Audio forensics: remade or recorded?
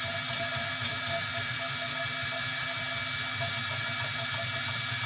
recorded